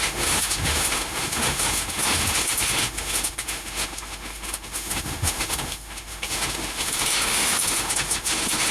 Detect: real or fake fake